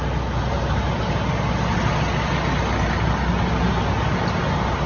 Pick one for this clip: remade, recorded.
recorded